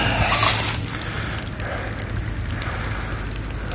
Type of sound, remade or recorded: recorded